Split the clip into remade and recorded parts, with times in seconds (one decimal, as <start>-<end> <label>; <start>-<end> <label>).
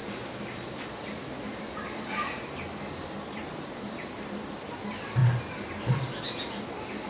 0.0-4.3 remade; 4.3-5.2 recorded; 5.2-5.8 remade; 5.8-7.1 recorded